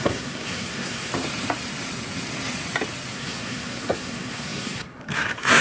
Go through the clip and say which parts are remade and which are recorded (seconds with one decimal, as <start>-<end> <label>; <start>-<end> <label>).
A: 0.0-1.1 remade; 1.1-3.1 recorded; 3.1-5.6 remade